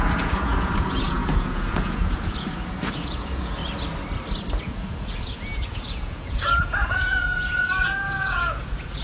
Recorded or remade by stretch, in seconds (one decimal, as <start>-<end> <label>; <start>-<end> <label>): 0.0-3.6 remade; 3.6-4.6 recorded; 4.6-9.0 remade